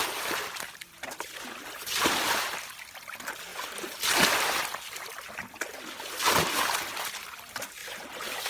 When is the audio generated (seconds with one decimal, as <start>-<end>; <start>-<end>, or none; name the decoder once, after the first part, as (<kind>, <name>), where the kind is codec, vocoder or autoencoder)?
none